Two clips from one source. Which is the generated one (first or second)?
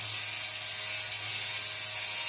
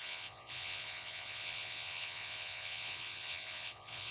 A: second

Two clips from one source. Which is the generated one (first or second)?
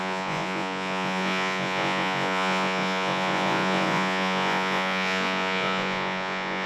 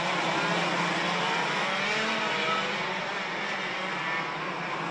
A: first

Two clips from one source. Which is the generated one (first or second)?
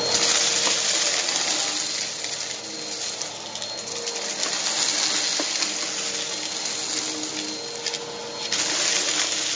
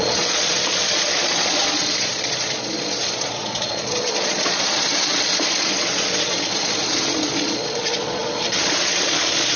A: second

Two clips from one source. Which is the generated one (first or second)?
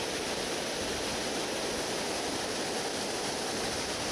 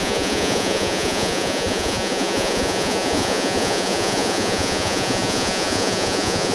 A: second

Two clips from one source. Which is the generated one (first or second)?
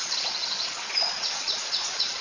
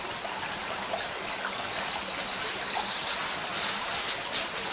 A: first